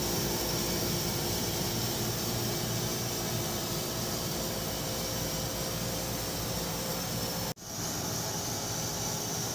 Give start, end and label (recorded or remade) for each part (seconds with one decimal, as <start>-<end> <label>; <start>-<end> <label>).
0.0-4.6 remade; 4.6-9.5 recorded